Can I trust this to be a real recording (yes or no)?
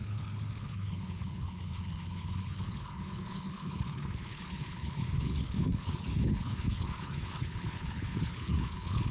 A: no